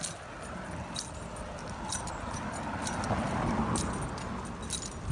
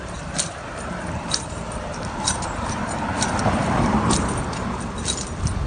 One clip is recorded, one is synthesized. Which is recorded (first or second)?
first